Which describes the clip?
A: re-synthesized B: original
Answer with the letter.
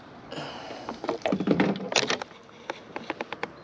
B